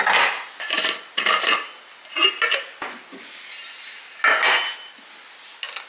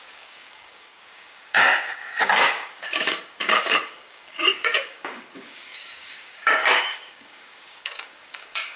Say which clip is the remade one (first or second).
second